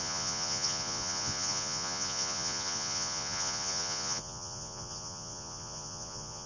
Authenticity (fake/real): fake